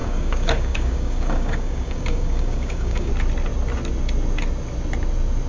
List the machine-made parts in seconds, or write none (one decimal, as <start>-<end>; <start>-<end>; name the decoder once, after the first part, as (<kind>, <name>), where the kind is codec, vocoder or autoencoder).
0.0-3.1 (codec, DAC)

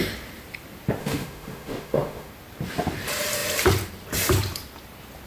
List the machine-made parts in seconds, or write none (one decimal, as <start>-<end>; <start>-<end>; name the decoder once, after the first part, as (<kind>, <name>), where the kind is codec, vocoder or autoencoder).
1.0-2.3 (autoencoder, DAC-VAE)

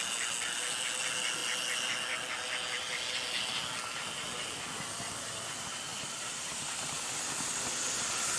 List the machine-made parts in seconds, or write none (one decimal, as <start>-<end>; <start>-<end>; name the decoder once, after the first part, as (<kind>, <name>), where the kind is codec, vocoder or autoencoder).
5.9-7.8 (vocoder, BigVGAN v2)

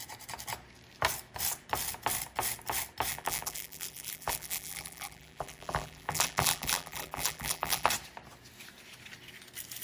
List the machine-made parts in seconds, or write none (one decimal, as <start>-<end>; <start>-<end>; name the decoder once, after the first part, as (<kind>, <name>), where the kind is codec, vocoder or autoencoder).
3.1-7.9 (vocoder, BigVGAN v2)